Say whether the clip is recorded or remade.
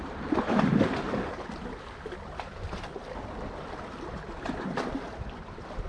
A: remade